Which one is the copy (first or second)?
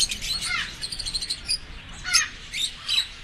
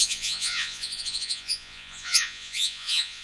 second